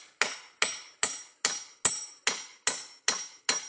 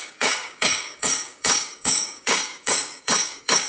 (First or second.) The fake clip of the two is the second